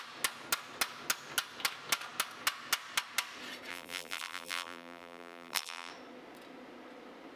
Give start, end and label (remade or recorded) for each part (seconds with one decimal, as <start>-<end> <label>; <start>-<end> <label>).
0.0-3.7 recorded; 3.7-5.9 remade; 5.9-7.4 recorded

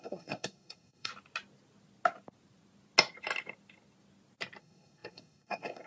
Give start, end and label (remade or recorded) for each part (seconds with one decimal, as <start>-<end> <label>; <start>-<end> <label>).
0.0-1.1 remade; 1.1-4.6 recorded; 4.6-5.9 remade

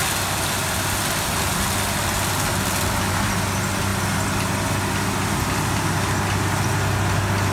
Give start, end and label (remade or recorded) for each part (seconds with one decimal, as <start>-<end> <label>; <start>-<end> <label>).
0.0-7.5 recorded

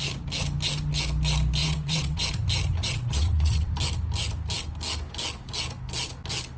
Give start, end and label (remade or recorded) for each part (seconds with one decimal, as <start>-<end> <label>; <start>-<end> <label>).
0.0-1.6 recorded; 1.6-2.2 remade; 2.2-2.8 recorded; 2.8-3.7 remade; 3.7-6.6 recorded

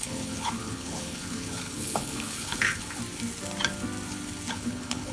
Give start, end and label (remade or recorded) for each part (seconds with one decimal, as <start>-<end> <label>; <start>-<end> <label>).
0.0-3.0 remade; 3.0-4.5 recorded; 4.5-5.1 remade

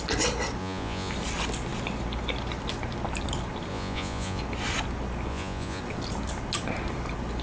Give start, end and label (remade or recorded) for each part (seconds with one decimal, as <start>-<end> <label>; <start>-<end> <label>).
0.0-0.6 recorded; 0.6-1.1 remade; 1.1-3.7 recorded; 3.7-4.4 remade; 4.4-5.3 recorded; 5.3-5.8 remade; 5.8-7.4 recorded